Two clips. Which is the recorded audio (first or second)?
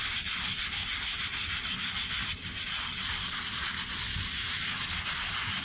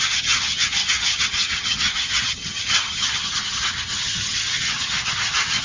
first